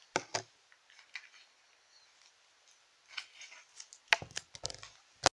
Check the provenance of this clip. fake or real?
real